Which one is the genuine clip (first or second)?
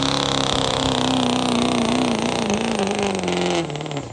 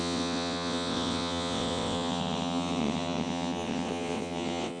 first